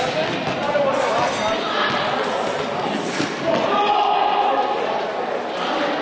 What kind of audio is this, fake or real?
real